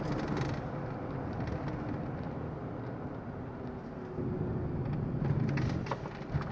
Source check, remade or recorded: recorded